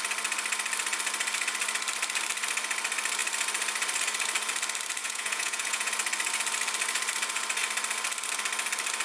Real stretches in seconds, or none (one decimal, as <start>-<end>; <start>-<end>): 0.0-5.0; 5.9-9.0